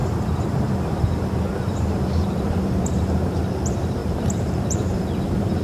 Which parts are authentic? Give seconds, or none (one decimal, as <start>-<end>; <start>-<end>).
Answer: 3.4-4.0